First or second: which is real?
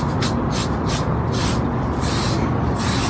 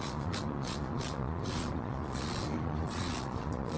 first